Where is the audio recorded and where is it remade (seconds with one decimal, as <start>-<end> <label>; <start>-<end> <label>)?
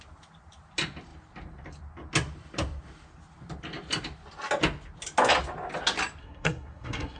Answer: 0.0-6.2 recorded; 6.2-7.2 remade